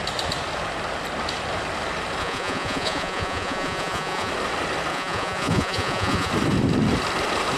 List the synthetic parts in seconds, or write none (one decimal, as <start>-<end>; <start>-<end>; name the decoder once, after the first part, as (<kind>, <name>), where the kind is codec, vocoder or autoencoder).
2.2-4.3 (vocoder, Vocos); 4.9-6.3